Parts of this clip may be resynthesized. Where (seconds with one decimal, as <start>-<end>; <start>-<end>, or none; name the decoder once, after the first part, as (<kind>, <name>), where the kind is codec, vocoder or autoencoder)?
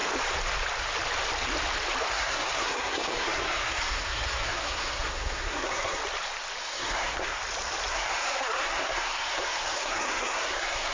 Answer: 2.1-6.0 (codec, SNAC); 6.6-7.4; 7.9-10.9